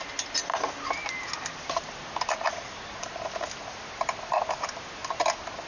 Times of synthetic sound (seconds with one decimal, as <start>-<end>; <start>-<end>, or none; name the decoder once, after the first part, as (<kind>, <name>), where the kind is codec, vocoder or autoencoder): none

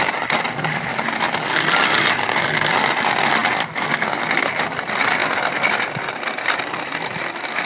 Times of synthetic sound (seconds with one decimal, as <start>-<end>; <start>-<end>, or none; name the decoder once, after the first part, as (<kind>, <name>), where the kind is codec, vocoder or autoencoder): none

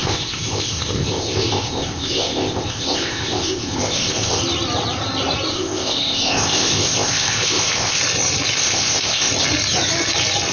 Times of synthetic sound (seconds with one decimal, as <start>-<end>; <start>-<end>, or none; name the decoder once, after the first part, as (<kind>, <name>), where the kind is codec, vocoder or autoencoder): 0.0-4.4 (codec, ZipCodec); 5.5-8.0; 8.6-9.3